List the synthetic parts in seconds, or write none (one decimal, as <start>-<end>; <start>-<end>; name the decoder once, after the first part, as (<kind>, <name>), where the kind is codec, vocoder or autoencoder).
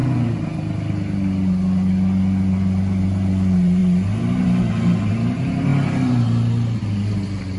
none